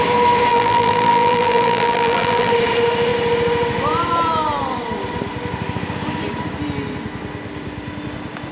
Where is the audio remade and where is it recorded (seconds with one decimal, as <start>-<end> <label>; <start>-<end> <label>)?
0.0-0.5 recorded; 0.5-2.5 remade; 2.5-8.5 recorded